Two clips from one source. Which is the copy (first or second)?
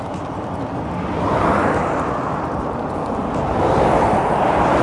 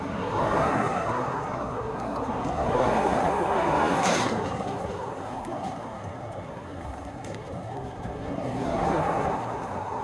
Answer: second